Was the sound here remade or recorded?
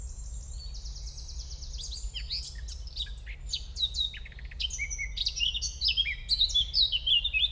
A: recorded